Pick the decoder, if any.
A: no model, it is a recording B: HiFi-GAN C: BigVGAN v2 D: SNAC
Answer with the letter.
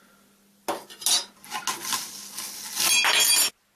A